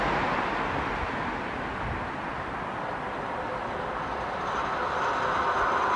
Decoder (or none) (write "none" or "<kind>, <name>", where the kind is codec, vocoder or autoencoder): none